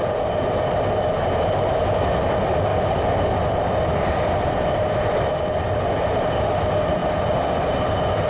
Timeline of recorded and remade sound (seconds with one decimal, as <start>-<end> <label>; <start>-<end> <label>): 0.0-8.3 recorded